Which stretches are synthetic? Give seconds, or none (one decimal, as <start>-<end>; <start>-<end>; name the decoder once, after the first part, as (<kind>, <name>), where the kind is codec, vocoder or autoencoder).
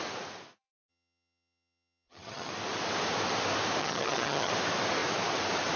0.9-2.5 (vocoder, HiFi-GAN); 3.8-4.5